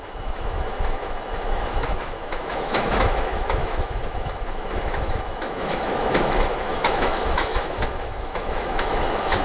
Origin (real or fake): fake